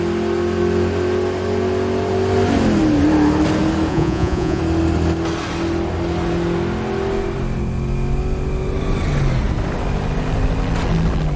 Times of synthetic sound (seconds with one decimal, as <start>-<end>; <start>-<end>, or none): 3.9-4.6